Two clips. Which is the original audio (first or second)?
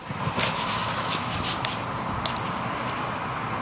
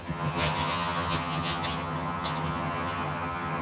first